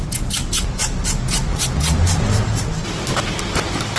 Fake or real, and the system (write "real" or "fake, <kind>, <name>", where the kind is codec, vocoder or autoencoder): real